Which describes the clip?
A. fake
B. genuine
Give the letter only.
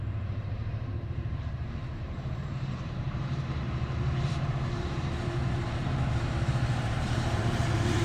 A